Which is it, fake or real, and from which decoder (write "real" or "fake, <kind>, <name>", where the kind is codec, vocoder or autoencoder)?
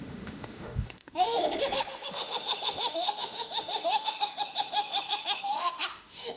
fake, autoencoder, DAC-VAE